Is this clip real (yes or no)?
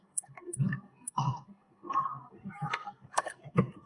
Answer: no